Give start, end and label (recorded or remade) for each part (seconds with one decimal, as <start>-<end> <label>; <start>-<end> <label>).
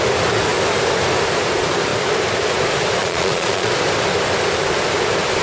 0.0-3.0 recorded; 3.0-3.7 remade; 3.7-5.4 recorded